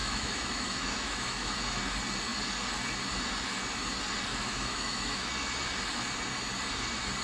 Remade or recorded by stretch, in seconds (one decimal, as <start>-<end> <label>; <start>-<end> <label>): 0.0-1.8 remade; 1.8-4.3 recorded; 4.3-5.3 remade; 5.3-7.2 recorded

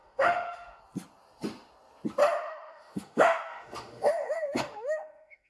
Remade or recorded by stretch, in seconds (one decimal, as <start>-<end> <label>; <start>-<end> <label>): 0.0-0.8 remade; 0.8-2.2 recorded; 2.2-5.5 remade

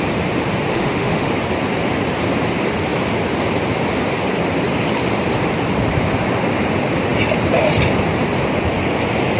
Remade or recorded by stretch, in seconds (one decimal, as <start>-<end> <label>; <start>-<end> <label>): 0.0-0.7 recorded; 0.7-1.3 remade; 1.3-9.4 recorded

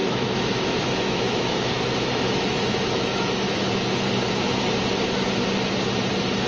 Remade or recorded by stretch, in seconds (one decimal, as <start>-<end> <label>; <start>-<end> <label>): 0.0-3.8 remade; 3.8-6.5 recorded

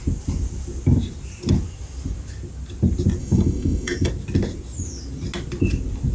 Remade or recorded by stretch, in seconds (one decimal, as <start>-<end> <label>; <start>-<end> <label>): 0.0-3.2 recorded; 3.2-4.1 remade; 4.1-6.1 recorded

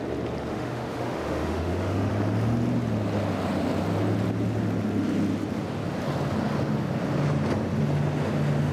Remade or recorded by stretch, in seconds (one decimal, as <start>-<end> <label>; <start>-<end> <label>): 0.0-0.5 recorded; 0.5-2.1 remade; 2.1-8.7 recorded

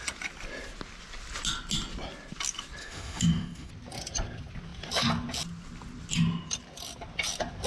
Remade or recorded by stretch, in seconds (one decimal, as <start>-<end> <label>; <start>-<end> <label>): 0.0-2.8 recorded; 2.8-3.7 remade; 3.7-7.7 recorded